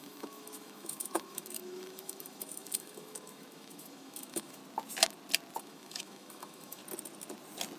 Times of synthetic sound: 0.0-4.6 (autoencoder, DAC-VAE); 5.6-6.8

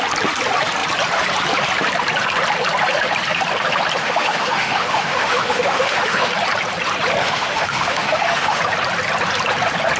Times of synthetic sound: 4.0-6.3 (autoencoder, DAC-VAE); 7.2-8.6

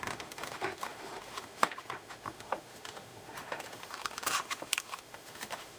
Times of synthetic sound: 0.0-5.8 (autoencoder, DAC-VAE)

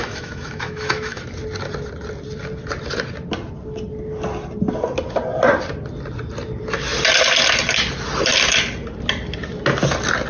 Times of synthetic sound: 0.0-1.2 (autoencoder, DAC-VAE)

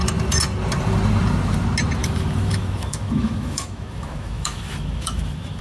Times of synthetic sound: 2.0-5.6 (autoencoder, DAC-VAE)